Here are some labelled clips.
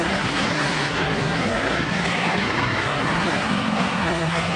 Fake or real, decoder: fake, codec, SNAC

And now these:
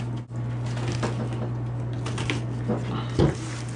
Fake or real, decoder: real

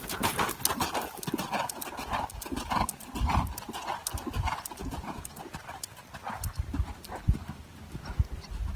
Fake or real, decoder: real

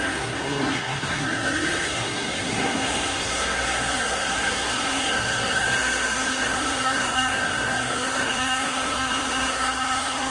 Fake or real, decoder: fake, codec, SNAC